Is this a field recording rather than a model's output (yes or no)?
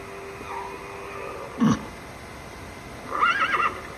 yes